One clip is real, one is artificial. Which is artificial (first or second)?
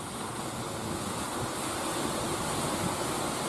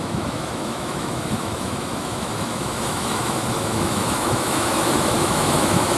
second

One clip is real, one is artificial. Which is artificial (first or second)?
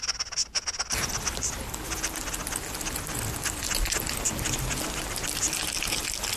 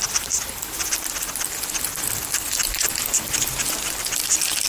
second